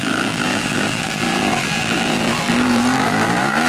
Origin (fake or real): fake